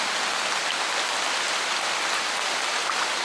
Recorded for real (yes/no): yes